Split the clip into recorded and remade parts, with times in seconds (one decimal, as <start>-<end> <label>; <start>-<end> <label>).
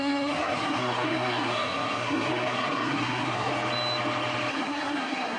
0.0-3.5 remade; 3.5-4.5 recorded; 4.5-5.4 remade